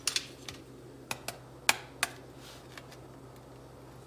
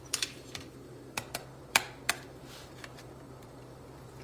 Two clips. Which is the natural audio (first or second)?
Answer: first